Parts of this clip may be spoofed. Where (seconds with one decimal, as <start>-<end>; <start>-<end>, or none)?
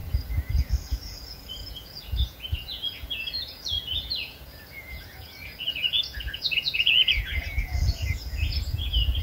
0.5-9.2